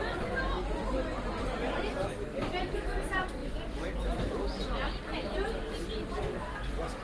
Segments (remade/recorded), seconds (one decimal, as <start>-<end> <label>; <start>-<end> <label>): 0.0-7.0 recorded